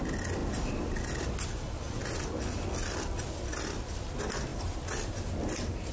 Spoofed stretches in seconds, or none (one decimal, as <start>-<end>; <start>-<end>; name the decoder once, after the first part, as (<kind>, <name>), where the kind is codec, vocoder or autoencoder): none